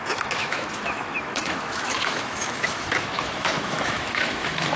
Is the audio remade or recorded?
remade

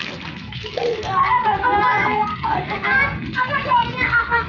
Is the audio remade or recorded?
remade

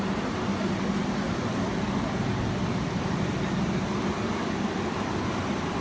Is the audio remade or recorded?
recorded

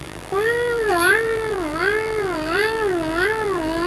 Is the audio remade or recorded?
remade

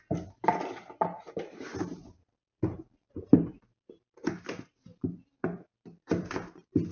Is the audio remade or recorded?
remade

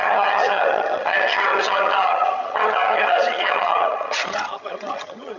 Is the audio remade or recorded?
remade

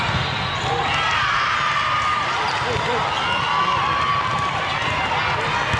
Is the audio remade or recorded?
recorded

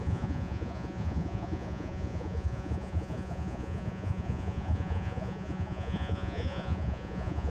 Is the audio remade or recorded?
remade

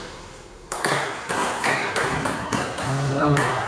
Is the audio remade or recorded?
remade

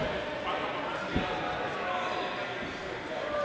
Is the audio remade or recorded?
recorded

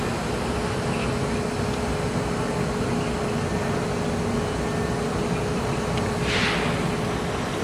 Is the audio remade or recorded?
recorded